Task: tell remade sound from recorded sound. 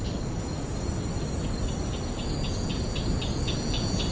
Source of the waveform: recorded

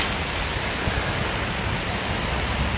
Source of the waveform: recorded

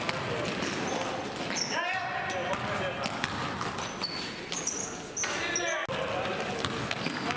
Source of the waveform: recorded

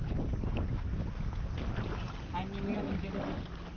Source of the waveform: recorded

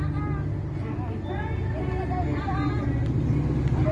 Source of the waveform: recorded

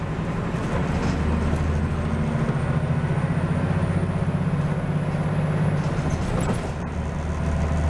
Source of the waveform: recorded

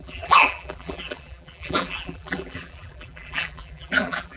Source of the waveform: remade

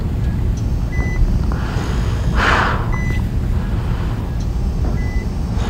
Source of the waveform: recorded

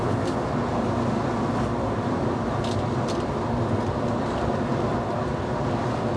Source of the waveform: recorded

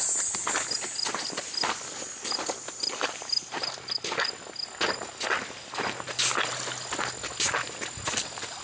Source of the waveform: recorded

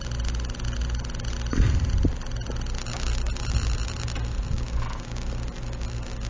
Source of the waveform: recorded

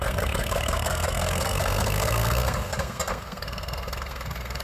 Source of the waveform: remade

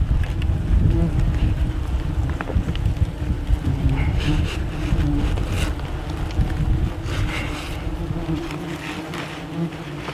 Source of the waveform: recorded